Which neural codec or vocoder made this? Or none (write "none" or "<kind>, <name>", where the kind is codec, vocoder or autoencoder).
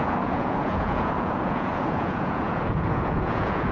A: vocoder, Vocos